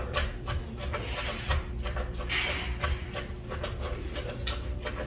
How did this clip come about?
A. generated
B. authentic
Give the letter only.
B